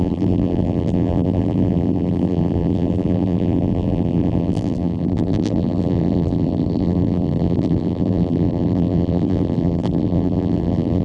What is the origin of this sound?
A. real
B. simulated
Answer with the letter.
B